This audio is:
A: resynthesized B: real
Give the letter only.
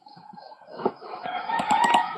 A